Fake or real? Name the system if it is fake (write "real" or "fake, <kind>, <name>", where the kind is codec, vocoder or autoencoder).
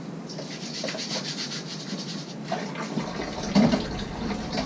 real